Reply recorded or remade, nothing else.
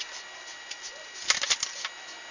recorded